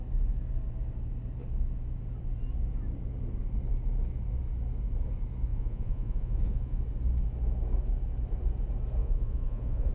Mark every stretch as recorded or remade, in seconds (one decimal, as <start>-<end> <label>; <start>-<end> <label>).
0.0-5.5 recorded; 5.5-6.8 remade; 6.8-9.0 recorded; 9.0-9.9 remade